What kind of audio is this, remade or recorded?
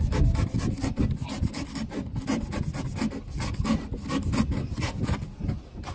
recorded